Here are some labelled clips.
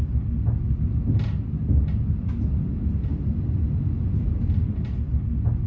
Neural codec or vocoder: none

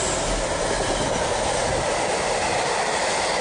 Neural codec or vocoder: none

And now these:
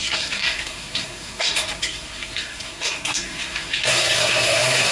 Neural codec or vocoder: codec, SNAC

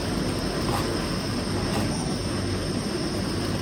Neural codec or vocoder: none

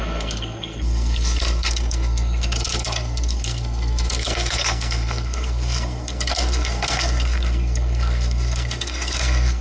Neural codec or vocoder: codec, SNAC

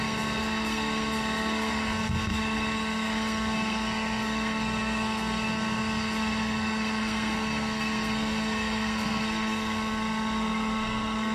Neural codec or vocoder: codec, SNAC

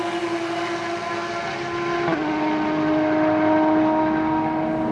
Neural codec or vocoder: none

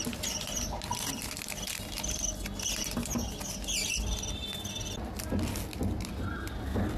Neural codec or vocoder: none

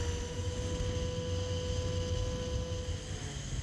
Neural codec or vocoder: none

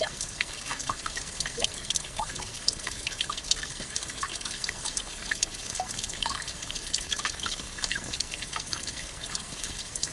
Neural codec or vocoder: codec, SNAC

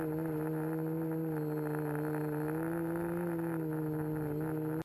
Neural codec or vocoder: none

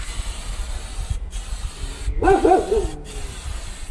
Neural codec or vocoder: none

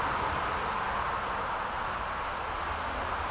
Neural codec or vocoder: none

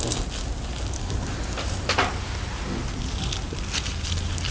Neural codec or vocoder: none